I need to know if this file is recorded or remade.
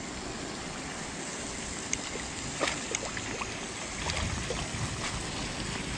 recorded